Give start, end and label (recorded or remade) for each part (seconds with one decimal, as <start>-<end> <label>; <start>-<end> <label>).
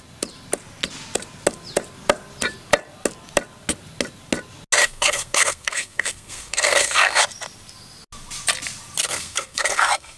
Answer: 0.0-4.8 recorded; 4.8-7.2 remade; 7.2-9.0 recorded; 9.0-10.2 remade